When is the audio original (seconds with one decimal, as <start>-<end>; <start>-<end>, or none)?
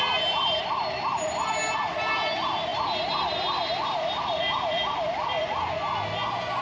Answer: 0.0-6.6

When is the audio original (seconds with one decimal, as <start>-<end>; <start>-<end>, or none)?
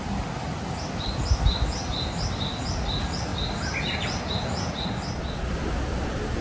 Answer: 0.0-6.4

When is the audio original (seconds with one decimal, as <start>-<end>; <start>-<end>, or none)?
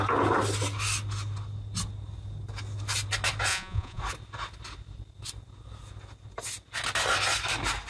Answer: 0.0-3.5; 4.0-7.9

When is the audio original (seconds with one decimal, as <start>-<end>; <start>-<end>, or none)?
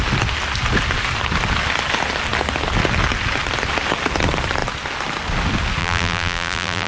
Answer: 0.0-5.8